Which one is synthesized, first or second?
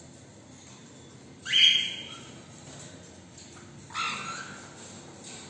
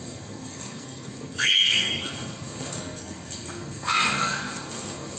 second